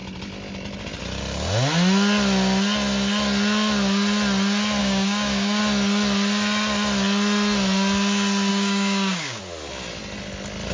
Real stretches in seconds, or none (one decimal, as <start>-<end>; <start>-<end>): 0.0-4.8; 5.6-8.5; 9.4-10.7